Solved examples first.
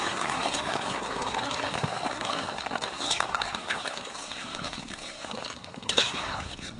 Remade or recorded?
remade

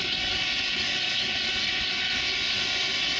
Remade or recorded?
recorded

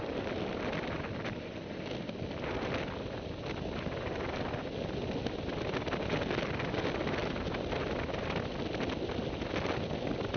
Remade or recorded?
recorded